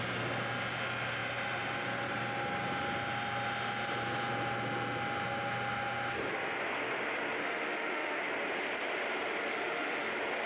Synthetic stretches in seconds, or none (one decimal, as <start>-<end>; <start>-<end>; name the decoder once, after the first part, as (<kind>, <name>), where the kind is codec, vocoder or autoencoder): 7.4-8.2 (autoencoder, DAC-VAE); 9.5-10.1